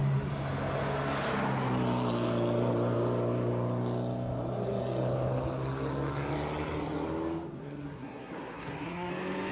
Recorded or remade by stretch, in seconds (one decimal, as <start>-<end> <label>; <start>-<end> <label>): 0.0-7.6 recorded; 7.6-9.1 remade; 9.1-9.5 recorded